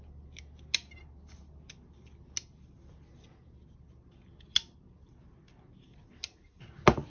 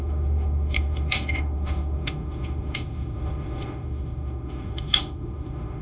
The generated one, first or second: second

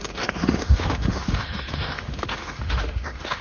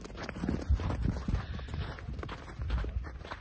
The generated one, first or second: first